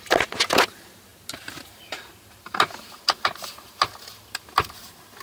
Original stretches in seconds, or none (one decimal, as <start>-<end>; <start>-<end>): 0.0-5.2